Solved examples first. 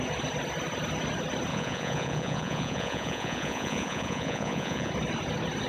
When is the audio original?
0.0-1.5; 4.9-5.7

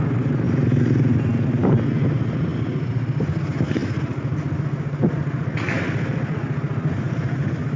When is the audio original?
0.0-7.8